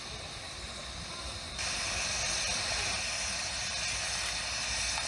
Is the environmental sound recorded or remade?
recorded